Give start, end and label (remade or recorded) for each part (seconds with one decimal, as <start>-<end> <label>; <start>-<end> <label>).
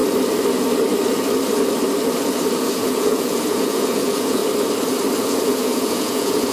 0.0-2.6 recorded; 2.6-4.4 remade; 4.4-5.2 recorded; 5.2-6.5 remade